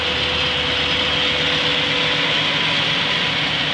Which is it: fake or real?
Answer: real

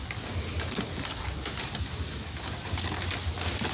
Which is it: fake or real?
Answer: real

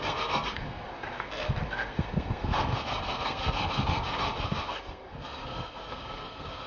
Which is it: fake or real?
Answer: fake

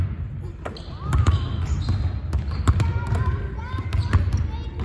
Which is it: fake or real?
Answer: real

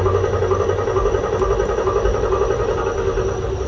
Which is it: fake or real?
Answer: real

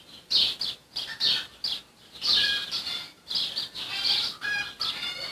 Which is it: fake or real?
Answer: real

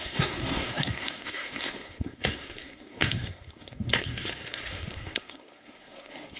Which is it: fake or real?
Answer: fake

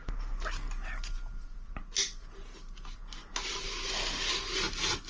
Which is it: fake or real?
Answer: real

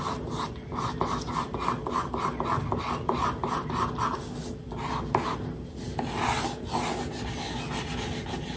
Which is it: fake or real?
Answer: real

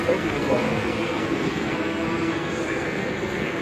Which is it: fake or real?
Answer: fake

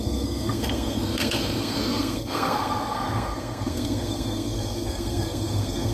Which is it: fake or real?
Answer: fake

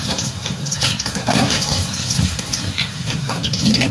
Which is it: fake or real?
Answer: fake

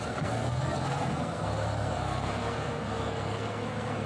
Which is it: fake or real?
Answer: fake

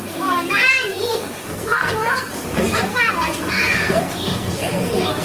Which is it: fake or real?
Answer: fake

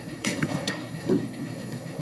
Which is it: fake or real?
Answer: fake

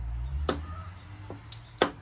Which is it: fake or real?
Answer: real